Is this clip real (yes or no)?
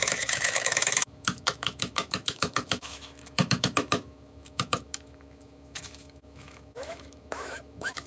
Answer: no